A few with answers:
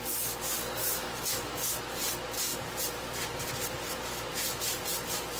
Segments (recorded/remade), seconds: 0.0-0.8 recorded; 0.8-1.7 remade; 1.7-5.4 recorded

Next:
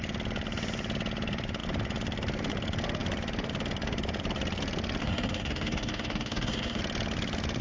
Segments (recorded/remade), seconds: 0.0-5.0 recorded; 5.0-6.8 remade; 6.8-7.6 recorded

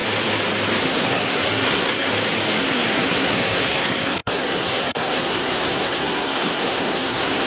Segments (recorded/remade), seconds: 0.0-0.8 recorded; 0.8-2.1 remade; 2.1-2.6 recorded; 2.6-7.5 remade

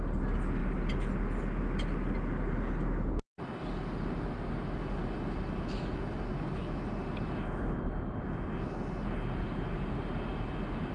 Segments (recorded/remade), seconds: 0.0-10.9 recorded

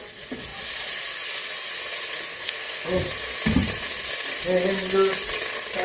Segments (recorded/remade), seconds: 0.0-2.3 recorded; 2.3-3.0 remade; 3.0-5.8 recorded